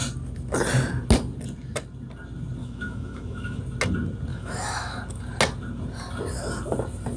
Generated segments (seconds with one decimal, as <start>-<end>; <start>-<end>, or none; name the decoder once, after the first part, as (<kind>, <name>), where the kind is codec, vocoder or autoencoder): 2.6-3.6 (autoencoder, DAC-VAE); 4.3-5.0